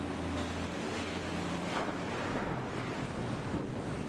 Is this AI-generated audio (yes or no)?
no